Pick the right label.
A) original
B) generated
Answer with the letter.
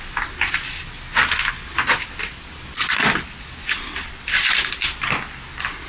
A